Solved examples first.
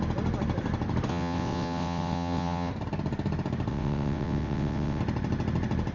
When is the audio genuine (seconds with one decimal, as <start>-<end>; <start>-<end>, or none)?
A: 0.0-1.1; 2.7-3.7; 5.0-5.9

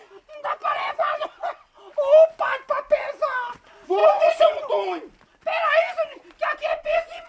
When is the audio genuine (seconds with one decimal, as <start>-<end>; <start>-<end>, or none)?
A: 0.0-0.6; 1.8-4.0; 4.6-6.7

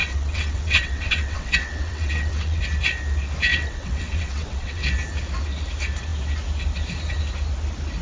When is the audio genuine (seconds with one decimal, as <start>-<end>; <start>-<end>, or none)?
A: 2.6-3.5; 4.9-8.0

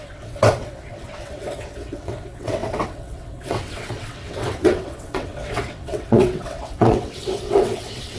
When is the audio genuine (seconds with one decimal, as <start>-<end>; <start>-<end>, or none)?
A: none

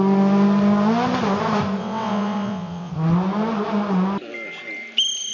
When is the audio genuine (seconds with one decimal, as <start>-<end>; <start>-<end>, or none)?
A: 0.0-1.8; 2.9-5.3

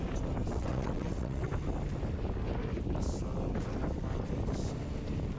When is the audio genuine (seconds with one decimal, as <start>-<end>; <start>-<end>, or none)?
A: 0.0-0.5; 1.5-5.4

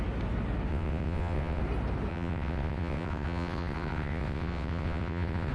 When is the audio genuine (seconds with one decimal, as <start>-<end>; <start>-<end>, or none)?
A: 0.0-0.7; 1.6-2.1